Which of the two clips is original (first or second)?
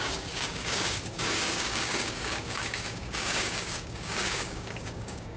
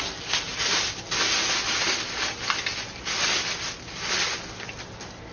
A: second